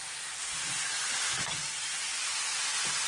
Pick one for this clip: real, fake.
real